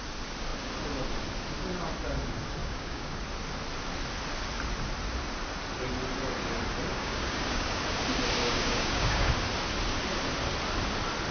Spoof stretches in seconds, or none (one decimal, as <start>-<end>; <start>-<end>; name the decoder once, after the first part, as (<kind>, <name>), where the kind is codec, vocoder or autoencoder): 2.6-3.2 (codec, DAC); 6.9-7.8; 8.4-9.3